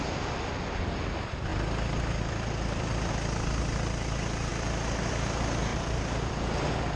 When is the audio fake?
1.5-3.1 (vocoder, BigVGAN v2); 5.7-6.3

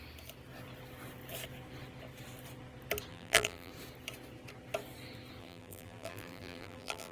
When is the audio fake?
3.1-3.7 (vocoder, BigVGAN v2); 5.4-7.1

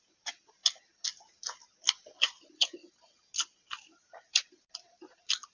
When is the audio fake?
0.0-0.6 (vocoder, BigVGAN v2); 2.2-2.8; 3.6-5.5